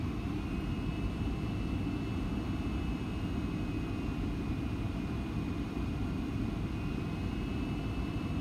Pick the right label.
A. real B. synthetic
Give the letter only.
A